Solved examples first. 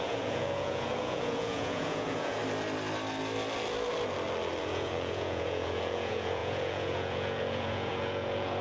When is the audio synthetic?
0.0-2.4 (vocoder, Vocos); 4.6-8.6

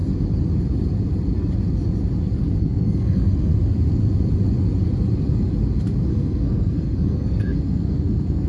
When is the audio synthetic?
2.6-3.5 (codec, SNAC); 6.1-8.5

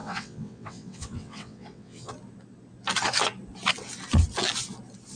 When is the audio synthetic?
0.0-2.1 (vocoder, WaveNeXt)